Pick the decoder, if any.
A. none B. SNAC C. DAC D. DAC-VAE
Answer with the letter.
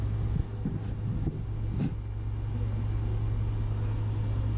A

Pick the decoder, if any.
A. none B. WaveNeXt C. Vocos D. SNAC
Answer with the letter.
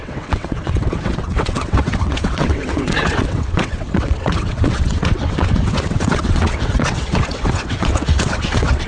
B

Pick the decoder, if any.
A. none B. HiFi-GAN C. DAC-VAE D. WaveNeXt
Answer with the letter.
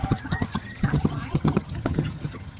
B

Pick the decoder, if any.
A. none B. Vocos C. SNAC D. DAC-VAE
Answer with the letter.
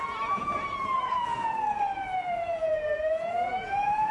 B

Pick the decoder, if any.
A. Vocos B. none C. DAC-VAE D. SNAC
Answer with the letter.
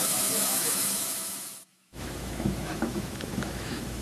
C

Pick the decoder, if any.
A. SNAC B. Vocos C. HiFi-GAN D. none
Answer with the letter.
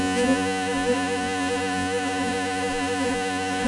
B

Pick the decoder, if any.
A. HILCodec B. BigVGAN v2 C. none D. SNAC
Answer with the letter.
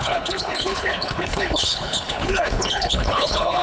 A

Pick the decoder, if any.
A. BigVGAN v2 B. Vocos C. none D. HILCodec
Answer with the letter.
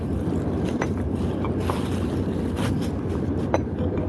C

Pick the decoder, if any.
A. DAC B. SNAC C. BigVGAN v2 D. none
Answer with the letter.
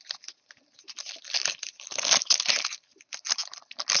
D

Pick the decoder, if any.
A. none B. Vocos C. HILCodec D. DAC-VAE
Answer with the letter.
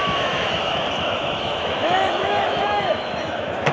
D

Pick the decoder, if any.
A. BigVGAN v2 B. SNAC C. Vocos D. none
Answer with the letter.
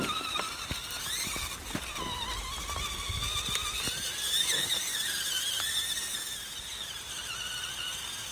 D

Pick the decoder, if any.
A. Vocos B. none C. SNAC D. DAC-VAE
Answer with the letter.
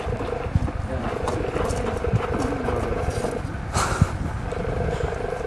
B